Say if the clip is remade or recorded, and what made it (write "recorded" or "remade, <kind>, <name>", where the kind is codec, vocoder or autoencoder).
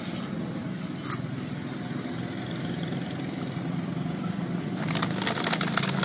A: recorded